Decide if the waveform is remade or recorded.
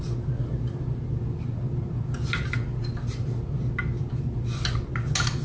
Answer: recorded